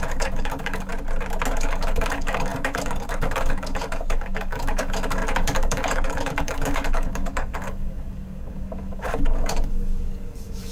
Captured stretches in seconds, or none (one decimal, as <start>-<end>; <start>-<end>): 0.9-1.5

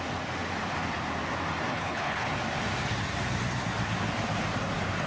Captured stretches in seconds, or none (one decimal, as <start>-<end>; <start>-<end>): 0.0-1.7; 2.3-5.1

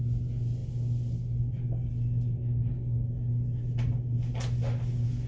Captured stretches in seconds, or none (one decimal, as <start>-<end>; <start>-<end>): 0.0-5.3

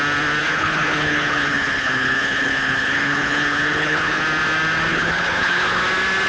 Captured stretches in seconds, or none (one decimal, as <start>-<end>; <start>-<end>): 0.0-0.4; 4.2-4.9; 5.8-6.3

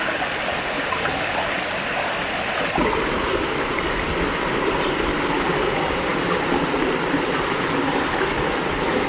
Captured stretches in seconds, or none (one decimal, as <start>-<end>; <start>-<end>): 0.0-9.1

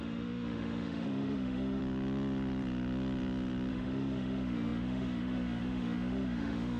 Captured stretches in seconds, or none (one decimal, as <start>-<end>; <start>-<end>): 1.8-3.7

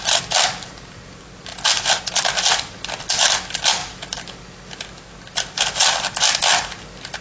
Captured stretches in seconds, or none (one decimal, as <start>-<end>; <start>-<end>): 0.0-7.2

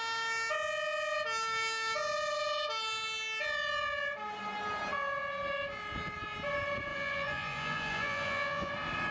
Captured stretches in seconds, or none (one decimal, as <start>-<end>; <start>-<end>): 0.0-6.9; 8.7-9.1